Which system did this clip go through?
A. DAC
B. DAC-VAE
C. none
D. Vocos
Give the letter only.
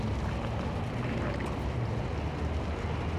C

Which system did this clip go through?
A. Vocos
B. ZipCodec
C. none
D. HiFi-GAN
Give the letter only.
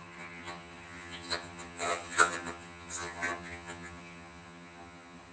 D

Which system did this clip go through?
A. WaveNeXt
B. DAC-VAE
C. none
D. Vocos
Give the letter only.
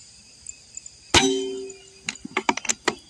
C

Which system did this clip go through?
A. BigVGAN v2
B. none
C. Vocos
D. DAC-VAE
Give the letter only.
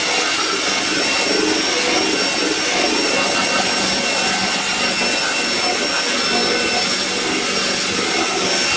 B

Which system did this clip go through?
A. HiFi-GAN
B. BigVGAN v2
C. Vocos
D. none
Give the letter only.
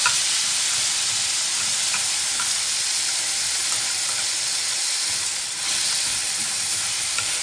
B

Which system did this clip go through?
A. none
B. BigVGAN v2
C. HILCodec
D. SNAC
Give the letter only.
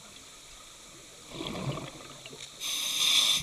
A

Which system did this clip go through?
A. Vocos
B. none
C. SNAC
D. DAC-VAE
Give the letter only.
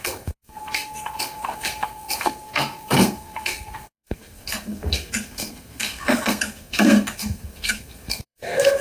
C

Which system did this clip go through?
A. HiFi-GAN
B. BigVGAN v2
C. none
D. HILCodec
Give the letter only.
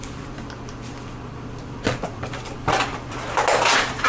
B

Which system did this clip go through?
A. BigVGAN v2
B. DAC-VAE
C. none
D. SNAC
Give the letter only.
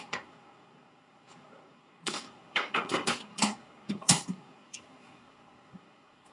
D